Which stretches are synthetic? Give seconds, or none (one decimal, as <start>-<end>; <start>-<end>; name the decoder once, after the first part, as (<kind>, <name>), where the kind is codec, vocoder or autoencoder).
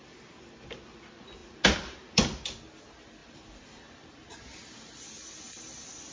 3.2-4.1 (vocoder, BigVGAN v2)